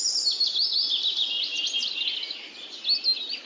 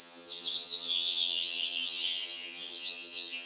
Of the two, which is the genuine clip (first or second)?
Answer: first